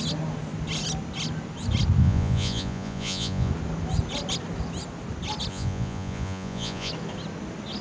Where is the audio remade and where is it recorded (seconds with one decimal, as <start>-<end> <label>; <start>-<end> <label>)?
0.0-2.0 recorded; 2.0-3.5 remade; 3.5-5.5 recorded; 5.5-6.9 remade; 6.9-7.8 recorded